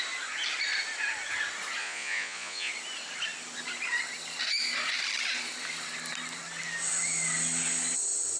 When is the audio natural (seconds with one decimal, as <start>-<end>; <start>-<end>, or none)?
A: 0.0-1.8; 2.7-8.4